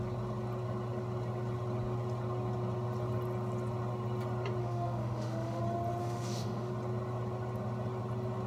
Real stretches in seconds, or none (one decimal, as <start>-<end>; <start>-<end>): 0.0-4.6; 5.6-6.0; 6.7-8.5

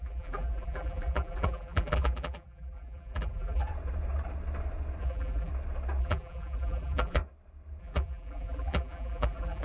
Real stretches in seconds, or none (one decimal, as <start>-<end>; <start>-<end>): 3.7-5.0; 5.5-6.0; 7.2-7.8

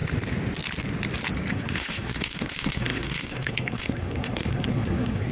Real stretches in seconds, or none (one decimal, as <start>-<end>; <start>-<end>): 0.0-1.5